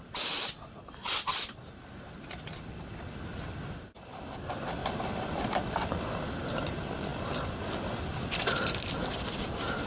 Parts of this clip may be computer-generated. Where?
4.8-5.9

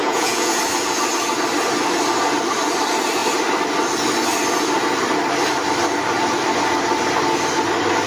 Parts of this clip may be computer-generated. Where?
0.0-0.6

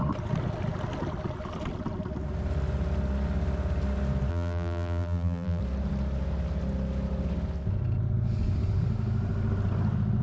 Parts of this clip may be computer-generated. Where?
4.3-5.6

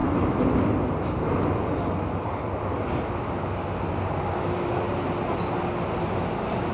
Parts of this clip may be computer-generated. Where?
none